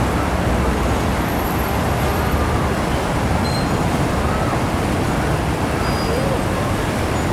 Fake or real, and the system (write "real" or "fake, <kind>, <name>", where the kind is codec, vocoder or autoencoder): real